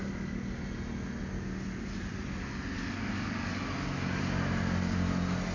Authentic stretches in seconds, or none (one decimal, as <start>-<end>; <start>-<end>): 0.0-5.5